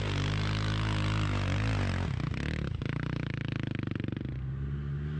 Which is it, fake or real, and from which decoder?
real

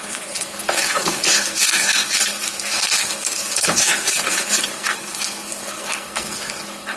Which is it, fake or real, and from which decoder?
fake, codec, SNAC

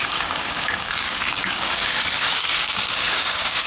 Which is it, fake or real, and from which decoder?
fake, codec, DAC